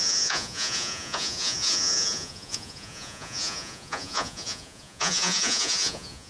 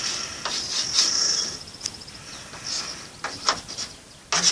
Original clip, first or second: second